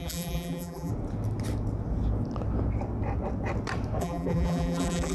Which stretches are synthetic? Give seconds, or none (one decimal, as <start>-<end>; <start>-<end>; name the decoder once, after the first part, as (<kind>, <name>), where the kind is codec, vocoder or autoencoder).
0.0-0.9 (vocoder, BigVGAN v2); 4.0-5.1